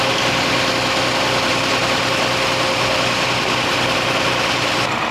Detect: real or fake real